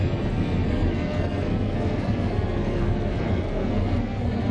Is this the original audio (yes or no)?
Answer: no